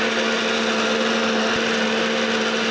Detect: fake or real real